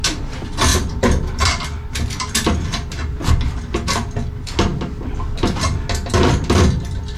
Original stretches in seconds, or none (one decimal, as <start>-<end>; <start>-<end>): 0.0-0.7; 3.3-7.2